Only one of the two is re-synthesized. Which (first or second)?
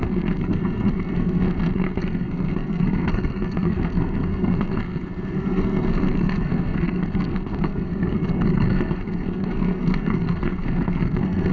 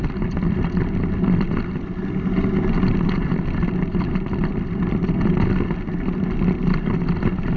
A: first